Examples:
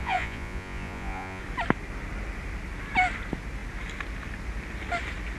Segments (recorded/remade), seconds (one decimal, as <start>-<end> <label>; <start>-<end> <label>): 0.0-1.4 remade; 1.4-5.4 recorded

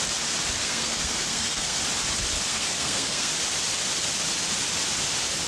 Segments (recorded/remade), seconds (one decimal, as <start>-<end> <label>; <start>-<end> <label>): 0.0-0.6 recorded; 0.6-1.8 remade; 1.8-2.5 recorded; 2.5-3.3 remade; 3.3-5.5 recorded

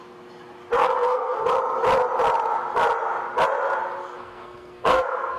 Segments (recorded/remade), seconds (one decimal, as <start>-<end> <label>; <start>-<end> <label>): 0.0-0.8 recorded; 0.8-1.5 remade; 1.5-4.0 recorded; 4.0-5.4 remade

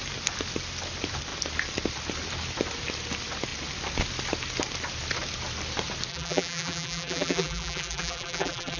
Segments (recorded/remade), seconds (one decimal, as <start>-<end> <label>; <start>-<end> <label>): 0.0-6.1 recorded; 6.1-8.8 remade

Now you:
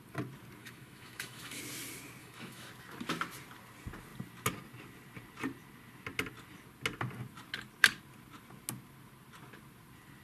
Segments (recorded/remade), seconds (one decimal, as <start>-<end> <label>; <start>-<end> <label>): 0.0-0.6 recorded; 0.6-1.6 remade; 1.6-2.2 recorded; 2.2-2.7 remade; 2.7-10.2 recorded

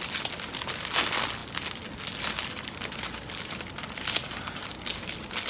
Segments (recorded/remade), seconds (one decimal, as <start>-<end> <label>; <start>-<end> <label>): 0.0-5.5 recorded

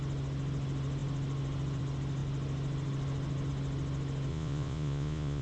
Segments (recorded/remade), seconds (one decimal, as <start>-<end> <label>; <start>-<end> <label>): 0.0-4.3 recorded; 4.3-5.4 remade

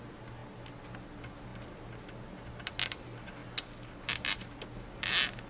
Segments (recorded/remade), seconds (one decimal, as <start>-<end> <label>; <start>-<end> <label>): 0.0-5.5 recorded